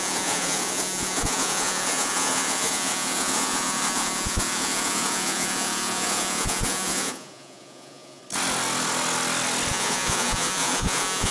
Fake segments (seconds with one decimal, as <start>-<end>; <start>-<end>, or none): 0.0-8.2; 9.7-11.3